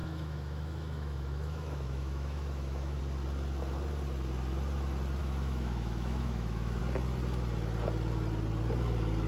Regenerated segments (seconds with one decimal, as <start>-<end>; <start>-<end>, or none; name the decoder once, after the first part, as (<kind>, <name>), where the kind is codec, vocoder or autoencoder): 0.0-3.0 (autoencoder, DAC-VAE); 5.2-6.8